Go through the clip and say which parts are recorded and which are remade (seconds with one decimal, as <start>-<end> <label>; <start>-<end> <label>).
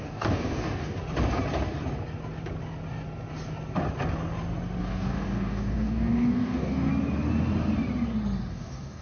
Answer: 0.0-1.0 remade; 1.0-4.8 recorded; 4.8-6.9 remade; 6.9-8.5 recorded; 8.5-9.0 remade